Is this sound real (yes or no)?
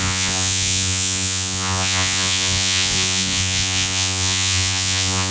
no